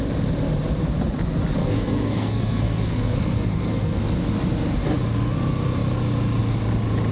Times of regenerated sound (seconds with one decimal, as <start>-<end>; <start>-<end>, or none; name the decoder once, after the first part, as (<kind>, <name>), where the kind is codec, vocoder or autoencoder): 1.6-4.0 (codec, SNAC)